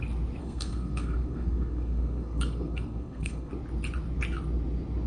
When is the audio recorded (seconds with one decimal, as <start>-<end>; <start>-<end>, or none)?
0.0-0.4; 3.5-5.1